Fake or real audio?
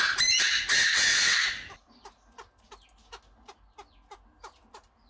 real